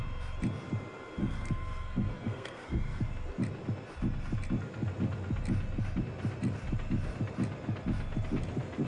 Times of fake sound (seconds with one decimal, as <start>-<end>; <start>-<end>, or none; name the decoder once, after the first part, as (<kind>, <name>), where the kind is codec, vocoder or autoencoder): 1.2-3.0 (codec, SNAC)